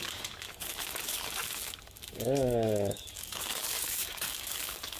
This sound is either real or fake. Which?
fake